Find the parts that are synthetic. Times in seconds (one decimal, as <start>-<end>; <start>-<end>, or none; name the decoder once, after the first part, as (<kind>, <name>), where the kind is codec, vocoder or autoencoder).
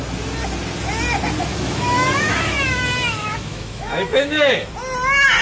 1.5-4.7 (autoencoder, DAC-VAE)